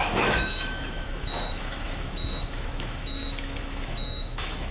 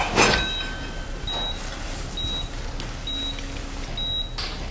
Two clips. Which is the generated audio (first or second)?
first